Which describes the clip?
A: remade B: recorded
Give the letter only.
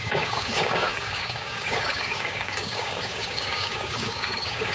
A